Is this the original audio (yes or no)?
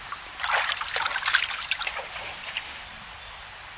yes